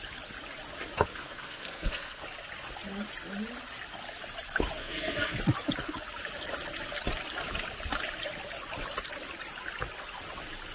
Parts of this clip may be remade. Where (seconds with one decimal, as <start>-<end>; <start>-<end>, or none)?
1.1-2.2; 4.8-5.4